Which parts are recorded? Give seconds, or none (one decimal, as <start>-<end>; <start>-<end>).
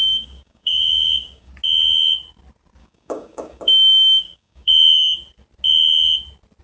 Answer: 1.5-2.8; 4.7-6.6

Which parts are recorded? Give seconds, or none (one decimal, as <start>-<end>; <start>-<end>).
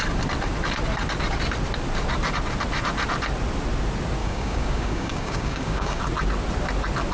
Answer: 0.0-4.2; 6.0-7.1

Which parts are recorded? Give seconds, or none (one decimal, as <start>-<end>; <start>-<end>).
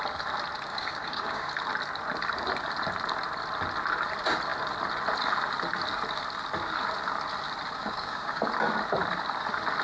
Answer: 0.0-0.7; 1.5-7.8; 8.5-9.8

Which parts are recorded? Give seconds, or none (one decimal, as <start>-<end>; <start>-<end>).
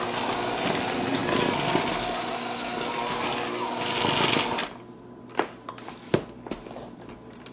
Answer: 0.0-7.5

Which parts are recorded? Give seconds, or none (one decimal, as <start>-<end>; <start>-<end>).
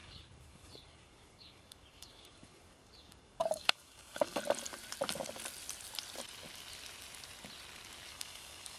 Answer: 4.4-8.1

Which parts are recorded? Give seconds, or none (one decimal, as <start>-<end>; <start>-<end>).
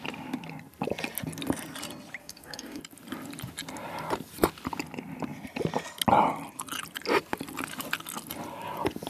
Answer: 0.0-2.2; 2.8-9.1